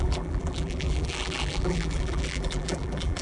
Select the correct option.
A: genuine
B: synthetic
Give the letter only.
B